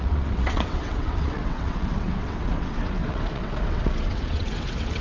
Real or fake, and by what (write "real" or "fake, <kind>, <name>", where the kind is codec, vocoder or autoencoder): fake, vocoder, WaveNeXt